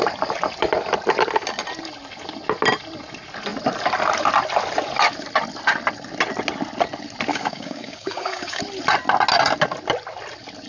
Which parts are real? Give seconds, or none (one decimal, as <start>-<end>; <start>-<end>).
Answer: 0.0-7.3; 8.6-10.7